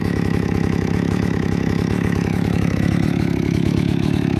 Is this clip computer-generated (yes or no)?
yes